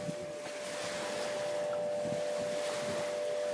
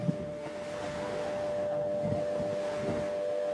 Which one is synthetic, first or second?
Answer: second